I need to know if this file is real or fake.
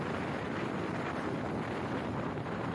real